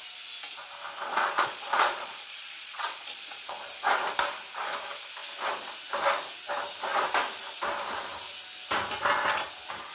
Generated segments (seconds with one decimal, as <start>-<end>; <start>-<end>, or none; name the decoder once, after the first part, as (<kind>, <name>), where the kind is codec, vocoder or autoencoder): 1.1-3.5 (vocoder, Vocos)